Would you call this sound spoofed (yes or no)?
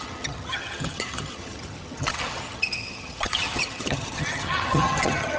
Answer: yes